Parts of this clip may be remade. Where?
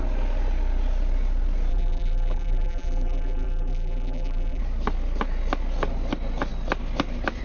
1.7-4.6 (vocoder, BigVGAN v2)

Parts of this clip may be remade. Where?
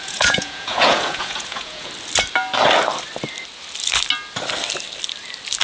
0.0-1.9 (vocoder, Vocos)